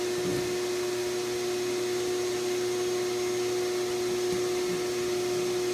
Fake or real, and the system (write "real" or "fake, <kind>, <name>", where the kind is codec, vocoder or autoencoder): real